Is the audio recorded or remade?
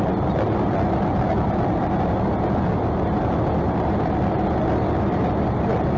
recorded